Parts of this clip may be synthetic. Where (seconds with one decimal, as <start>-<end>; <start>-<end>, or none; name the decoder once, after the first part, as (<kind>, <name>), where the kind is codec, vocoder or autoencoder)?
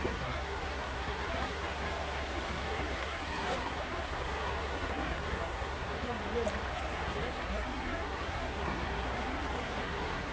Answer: 0.0-6.2 (codec, SNAC); 6.7-10.3